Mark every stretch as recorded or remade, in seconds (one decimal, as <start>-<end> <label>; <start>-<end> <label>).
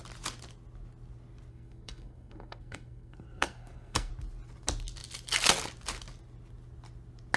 0.0-1.5 recorded; 1.5-4.1 remade; 4.1-7.4 recorded